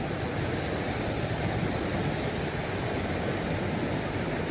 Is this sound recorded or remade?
recorded